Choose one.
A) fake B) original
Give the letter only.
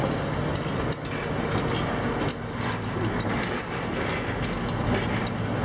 B